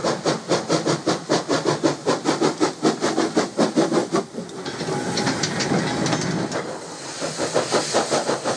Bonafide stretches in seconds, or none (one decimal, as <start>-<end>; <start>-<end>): 0.0-8.6